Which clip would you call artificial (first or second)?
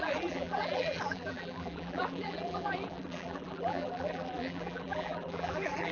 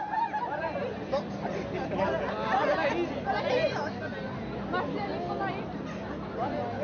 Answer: first